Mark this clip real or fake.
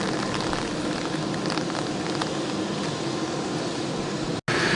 real